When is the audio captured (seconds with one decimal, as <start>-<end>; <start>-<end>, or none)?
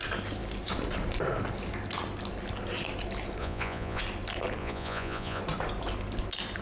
0.0-3.4; 4.0-4.6; 5.4-6.6